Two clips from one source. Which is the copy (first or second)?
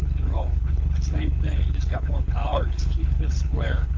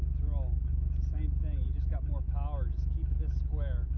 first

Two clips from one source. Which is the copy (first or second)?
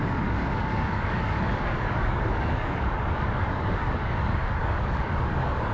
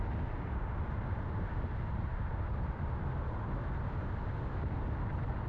first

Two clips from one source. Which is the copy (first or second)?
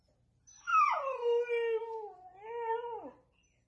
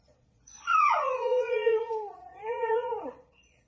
second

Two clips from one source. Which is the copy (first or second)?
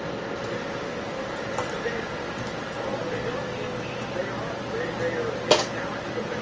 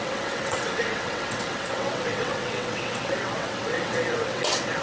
second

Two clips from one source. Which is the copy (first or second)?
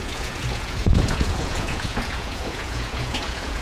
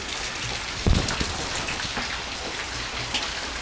first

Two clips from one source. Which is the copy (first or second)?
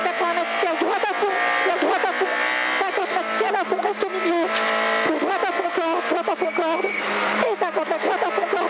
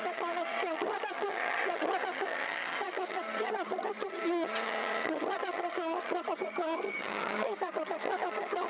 second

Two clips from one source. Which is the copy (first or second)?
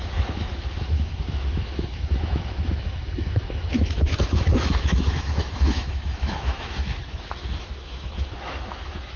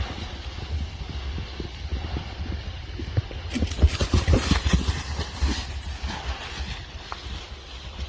first